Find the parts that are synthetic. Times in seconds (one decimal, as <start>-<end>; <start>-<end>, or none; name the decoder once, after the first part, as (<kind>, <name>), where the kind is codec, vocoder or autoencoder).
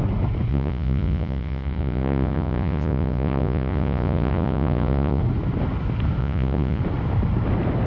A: 0.5-5.2 (vocoder, Vocos); 6.2-6.8